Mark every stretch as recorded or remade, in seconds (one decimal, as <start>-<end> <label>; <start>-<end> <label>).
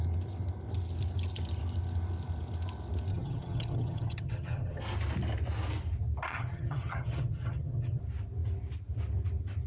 0.0-3.1 recorded; 3.1-4.8 remade; 4.8-6.3 recorded; 6.3-8.0 remade; 8.0-9.7 recorded